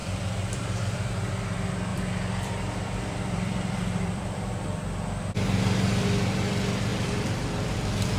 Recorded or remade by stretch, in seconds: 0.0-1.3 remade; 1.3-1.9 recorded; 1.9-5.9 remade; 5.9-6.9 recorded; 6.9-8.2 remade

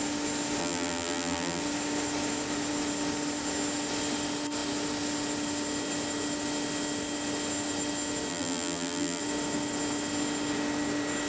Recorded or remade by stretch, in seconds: 0.0-0.6 recorded; 0.6-1.6 remade; 1.6-8.3 recorded; 8.3-9.2 remade; 9.2-11.3 recorded

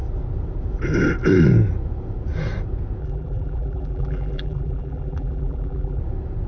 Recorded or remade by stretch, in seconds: 0.0-3.0 recorded; 3.0-6.0 remade; 6.0-6.5 recorded

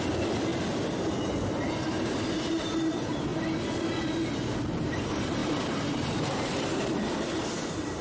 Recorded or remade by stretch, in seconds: 0.0-0.5 remade; 0.5-1.7 recorded; 1.7-3.3 remade; 3.3-4.7 recorded; 4.7-8.0 remade

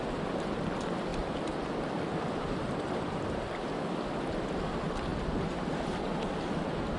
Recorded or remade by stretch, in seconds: 0.0-1.1 recorded; 1.1-4.6 remade; 4.6-5.1 recorded; 5.1-6.2 remade; 6.2-7.0 recorded

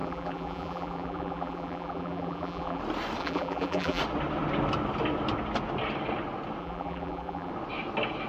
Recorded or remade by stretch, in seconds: 0.0-2.8 remade; 2.8-3.2 recorded; 3.2-4.0 remade; 4.0-6.6 recorded; 6.6-7.5 remade; 7.5-8.3 recorded

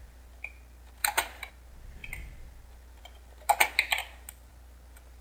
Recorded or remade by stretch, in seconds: 0.0-1.0 recorded; 1.0-1.5 remade; 1.5-5.2 recorded

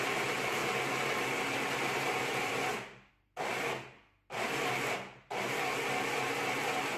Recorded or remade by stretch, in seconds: 0.0-7.0 recorded